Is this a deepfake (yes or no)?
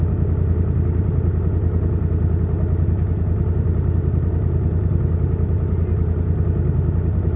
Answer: no